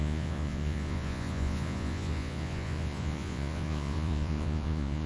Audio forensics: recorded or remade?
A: remade